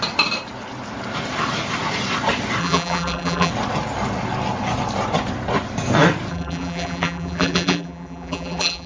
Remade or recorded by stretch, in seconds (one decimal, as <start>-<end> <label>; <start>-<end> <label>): 0.0-2.6 recorded; 2.6-3.5 remade; 3.5-6.3 recorded; 6.3-8.9 remade